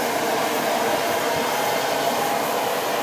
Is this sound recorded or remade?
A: recorded